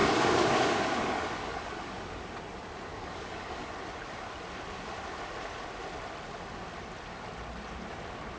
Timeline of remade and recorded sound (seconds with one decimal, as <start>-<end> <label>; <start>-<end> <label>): 0.0-2.2 remade; 2.2-2.9 recorded; 2.9-3.7 remade; 3.7-8.4 recorded